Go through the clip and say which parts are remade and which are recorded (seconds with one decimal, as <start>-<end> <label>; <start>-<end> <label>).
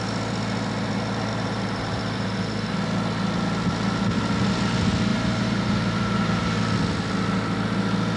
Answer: 0.0-1.3 recorded; 1.3-2.7 remade; 2.7-5.1 recorded; 5.1-6.6 remade; 6.6-8.2 recorded